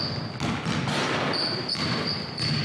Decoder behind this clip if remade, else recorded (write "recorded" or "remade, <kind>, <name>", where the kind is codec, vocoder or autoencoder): recorded